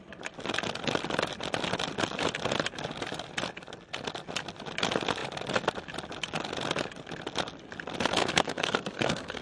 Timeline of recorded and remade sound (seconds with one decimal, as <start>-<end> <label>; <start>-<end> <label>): 0.0-8.1 recorded; 8.1-9.4 remade